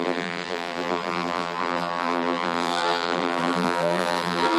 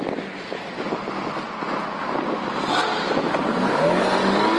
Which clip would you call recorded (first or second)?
second